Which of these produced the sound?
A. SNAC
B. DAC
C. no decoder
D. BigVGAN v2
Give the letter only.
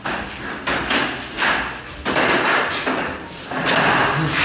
C